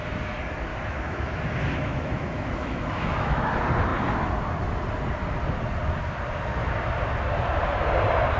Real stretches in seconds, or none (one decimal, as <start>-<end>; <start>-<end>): 0.0-0.7; 3.5-8.4